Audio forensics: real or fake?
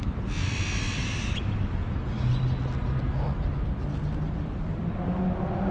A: real